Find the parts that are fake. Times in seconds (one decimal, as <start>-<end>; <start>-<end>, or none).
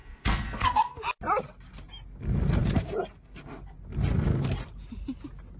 0.0-1.0